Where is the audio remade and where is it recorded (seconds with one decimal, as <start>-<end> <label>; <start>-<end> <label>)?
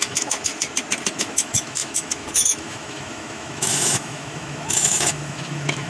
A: 0.0-0.5 remade; 0.5-1.1 recorded; 1.1-5.9 remade